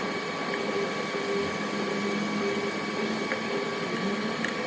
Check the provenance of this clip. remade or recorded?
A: recorded